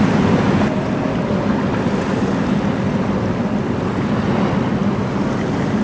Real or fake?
real